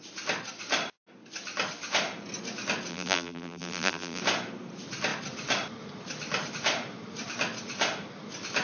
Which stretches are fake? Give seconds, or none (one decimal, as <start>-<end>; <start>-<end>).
2.9-4.2